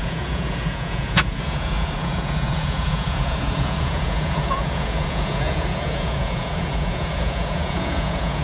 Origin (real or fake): fake